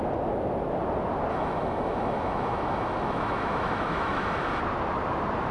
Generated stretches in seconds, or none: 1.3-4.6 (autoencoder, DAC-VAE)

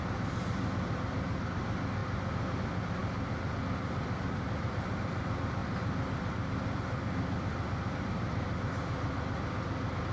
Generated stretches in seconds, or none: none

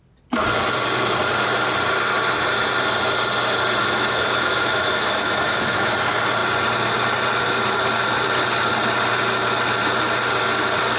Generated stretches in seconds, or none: 3.8-5.9 (autoencoder, DAC-VAE)